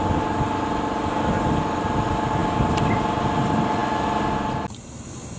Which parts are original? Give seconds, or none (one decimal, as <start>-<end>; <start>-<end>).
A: 0.0-5.4